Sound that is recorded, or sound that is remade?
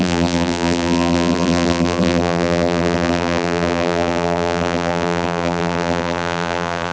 remade